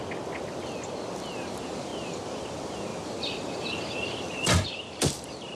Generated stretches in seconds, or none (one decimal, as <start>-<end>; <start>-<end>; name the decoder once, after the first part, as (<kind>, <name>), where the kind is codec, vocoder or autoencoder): 1.1-1.9 (vocoder, BigVGAN v2); 2.5-5.5